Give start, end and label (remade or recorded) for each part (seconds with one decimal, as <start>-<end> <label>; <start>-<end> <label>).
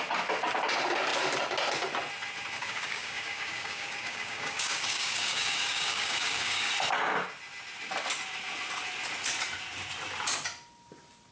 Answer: 0.0-2.6 recorded; 2.6-6.7 remade; 6.7-11.3 recorded